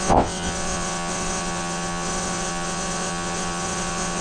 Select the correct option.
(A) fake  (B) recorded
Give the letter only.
A